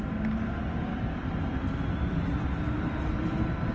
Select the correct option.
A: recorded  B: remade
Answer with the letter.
A